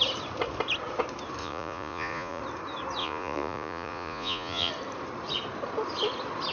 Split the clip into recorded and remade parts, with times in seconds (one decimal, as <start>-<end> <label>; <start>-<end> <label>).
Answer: 0.0-1.4 recorded; 1.4-2.4 remade; 2.4-3.0 recorded; 3.0-4.7 remade; 4.7-6.5 recorded